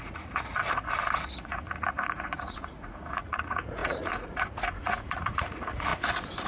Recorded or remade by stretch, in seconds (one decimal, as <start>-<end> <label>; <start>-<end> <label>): 0.0-0.6 remade; 0.6-1.4 recorded; 1.4-6.5 remade